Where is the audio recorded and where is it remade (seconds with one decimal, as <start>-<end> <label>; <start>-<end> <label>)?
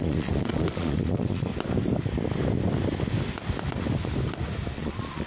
0.0-1.5 remade; 1.5-4.7 recorded; 4.7-5.3 remade